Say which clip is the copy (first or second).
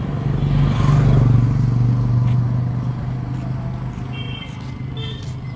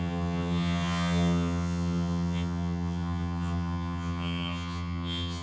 second